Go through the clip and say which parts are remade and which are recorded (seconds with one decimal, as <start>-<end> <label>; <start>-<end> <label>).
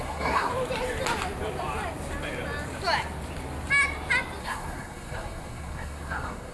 0.0-0.5 remade; 0.5-4.4 recorded; 4.4-6.5 remade